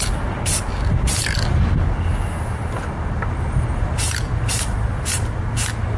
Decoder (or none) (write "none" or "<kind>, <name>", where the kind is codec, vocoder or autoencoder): none